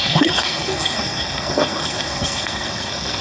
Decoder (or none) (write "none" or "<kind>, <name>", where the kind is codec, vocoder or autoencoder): codec, SNAC